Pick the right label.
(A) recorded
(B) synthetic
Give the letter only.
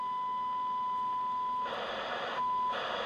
A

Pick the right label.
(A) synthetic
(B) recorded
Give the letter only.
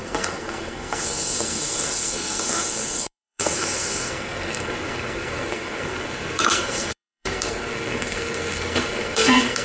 A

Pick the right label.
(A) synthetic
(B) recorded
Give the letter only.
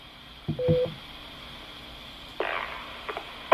A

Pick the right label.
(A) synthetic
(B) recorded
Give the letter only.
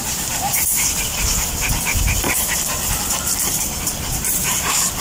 A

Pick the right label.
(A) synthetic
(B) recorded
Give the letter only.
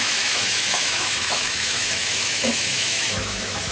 A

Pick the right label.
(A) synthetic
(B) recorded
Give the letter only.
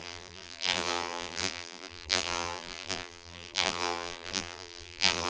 A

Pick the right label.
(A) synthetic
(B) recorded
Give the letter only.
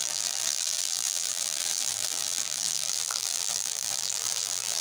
A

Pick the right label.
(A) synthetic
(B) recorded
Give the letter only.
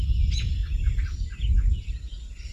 B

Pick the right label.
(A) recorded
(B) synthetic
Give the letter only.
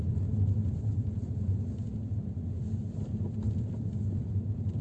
A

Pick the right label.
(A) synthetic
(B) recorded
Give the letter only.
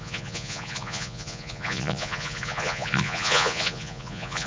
A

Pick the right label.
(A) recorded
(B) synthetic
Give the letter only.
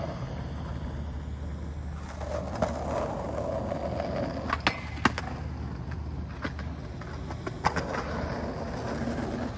A